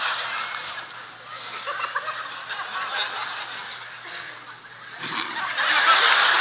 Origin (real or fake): real